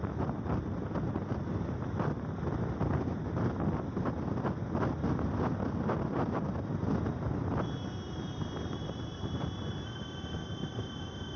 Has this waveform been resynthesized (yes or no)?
no